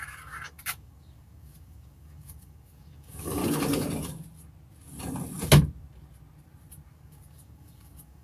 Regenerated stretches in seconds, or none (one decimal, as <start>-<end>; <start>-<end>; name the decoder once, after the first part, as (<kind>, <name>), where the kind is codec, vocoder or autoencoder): 0.0-3.4 (codec, DAC); 6.9-8.2